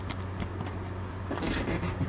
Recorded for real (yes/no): no